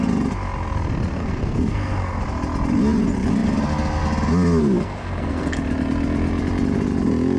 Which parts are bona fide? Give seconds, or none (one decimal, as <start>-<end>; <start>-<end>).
0.0-1.2; 2.2-4.6; 5.6-7.4